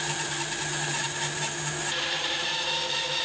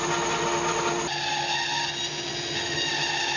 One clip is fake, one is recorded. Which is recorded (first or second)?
second